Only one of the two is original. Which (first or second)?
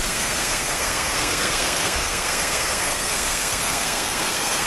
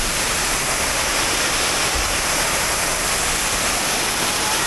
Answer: second